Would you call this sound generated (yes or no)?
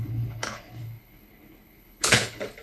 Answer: yes